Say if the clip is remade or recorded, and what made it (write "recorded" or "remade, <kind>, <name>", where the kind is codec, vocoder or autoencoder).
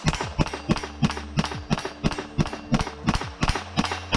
recorded